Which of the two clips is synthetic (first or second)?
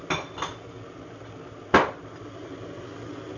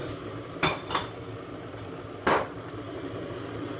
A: second